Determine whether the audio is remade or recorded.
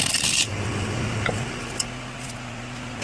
recorded